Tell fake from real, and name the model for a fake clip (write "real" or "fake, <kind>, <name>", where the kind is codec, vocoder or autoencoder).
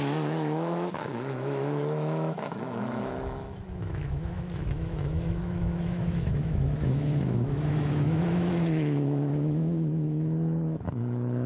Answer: fake, autoencoder, DAC-VAE